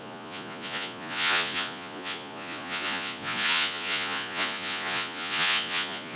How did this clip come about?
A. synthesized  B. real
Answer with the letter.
A